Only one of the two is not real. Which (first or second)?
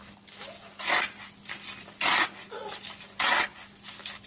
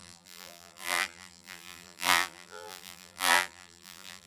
second